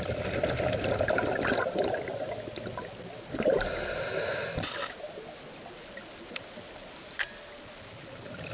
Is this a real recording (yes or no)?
yes